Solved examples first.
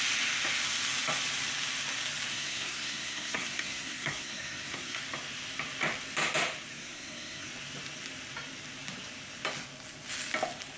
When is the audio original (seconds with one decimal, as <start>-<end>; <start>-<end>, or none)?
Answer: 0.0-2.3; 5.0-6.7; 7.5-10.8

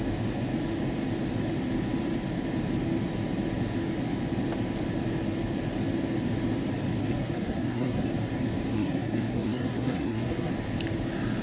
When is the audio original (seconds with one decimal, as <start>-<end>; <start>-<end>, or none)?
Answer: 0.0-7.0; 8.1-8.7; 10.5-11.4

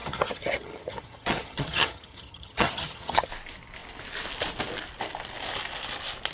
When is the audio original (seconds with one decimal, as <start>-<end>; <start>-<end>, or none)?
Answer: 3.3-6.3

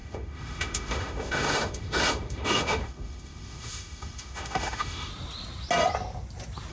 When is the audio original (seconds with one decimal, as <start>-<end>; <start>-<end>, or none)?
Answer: 5.1-6.7

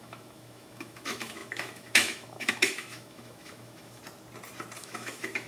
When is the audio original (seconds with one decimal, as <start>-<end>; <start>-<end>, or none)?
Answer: 4.0-4.8